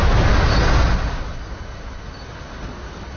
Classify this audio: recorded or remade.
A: recorded